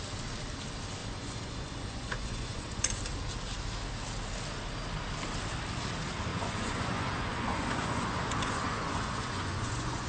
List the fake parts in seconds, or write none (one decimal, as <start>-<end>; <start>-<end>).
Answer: 1.0-3.0; 6.3-10.1